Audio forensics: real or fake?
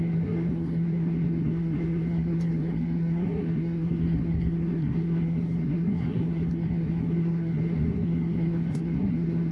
fake